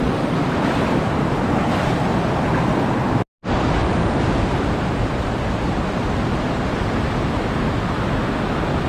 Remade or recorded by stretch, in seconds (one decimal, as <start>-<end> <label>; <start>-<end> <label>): 0.0-3.8 recorded; 3.8-5.3 remade; 5.3-8.9 recorded